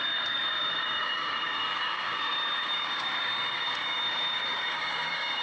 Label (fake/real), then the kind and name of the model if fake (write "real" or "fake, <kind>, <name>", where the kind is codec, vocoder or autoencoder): fake, codec, DAC